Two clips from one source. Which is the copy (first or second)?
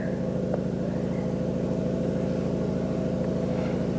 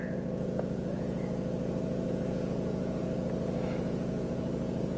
second